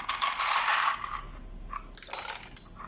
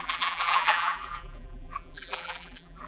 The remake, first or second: second